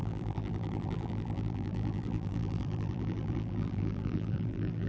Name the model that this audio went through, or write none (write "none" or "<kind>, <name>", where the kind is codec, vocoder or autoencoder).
vocoder, BigVGAN v2